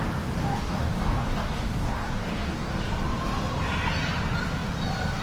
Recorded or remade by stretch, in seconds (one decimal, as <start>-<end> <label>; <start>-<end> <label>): 0.0-0.4 recorded; 0.4-2.7 remade; 2.7-5.2 recorded